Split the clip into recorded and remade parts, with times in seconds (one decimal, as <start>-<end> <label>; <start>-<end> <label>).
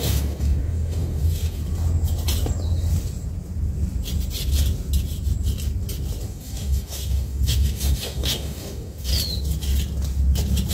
0.0-1.6 remade; 1.6-6.3 recorded; 6.3-9.1 remade; 9.1-10.7 recorded